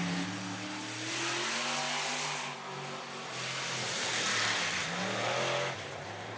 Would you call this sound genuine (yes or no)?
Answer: yes